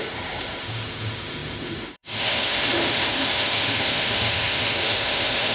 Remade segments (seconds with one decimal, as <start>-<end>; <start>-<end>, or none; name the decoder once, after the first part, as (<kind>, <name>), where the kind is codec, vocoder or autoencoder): 0.0-5.5 (autoencoder, DAC-VAE)

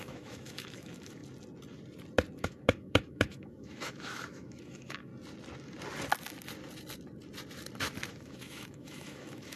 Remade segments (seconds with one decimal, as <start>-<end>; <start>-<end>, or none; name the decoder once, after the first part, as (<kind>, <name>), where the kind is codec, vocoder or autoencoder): 0.0-1.2 (autoencoder, DAC-VAE); 2.4-5.1; 8.1-9.6

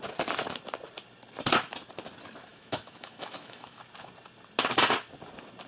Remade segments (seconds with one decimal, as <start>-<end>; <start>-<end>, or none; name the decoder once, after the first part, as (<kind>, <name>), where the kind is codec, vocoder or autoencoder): 2.5-3.8 (autoencoder, DAC-VAE)